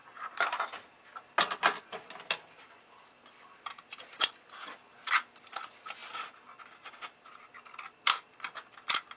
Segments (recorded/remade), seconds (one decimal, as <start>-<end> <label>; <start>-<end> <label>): 0.0-9.2 recorded